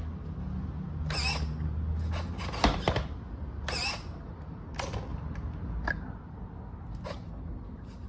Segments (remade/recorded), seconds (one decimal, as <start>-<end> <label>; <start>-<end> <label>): 0.0-8.1 recorded